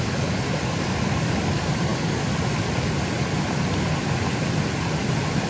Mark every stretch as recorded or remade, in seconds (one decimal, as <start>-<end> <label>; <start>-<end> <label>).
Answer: 0.0-1.9 remade; 1.9-4.4 recorded; 4.4-5.5 remade

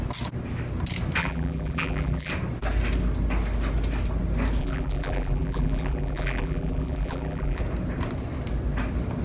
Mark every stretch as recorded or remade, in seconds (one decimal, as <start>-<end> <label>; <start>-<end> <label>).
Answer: 0.0-1.2 recorded; 1.2-2.3 remade; 2.3-4.6 recorded; 4.6-7.6 remade; 7.6-9.2 recorded